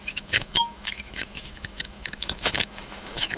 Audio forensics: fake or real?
fake